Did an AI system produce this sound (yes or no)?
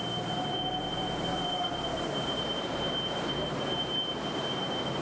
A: yes